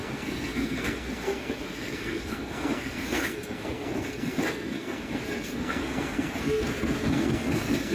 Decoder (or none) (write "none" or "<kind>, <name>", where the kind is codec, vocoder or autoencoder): codec, SNAC